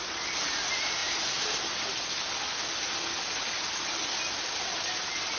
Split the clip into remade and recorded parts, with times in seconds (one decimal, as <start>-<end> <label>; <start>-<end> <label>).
0.0-5.4 recorded